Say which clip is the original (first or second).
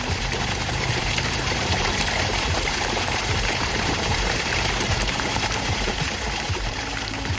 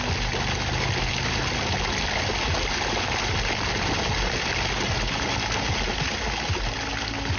second